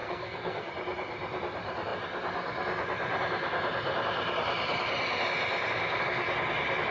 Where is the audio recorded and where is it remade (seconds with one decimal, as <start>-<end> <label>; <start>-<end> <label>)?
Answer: 0.0-0.7 remade; 0.7-6.9 recorded